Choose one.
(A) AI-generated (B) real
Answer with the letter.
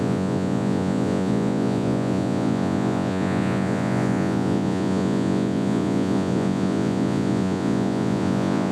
A